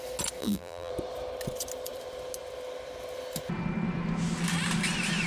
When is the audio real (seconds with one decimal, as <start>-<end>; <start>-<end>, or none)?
0.0-0.4; 0.9-5.3